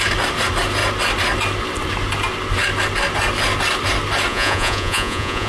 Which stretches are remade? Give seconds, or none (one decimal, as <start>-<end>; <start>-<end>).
4.3-5.5